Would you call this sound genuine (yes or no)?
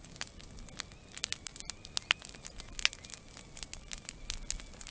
yes